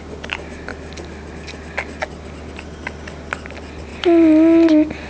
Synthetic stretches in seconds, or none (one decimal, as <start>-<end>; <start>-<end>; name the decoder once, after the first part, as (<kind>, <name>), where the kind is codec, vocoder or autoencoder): none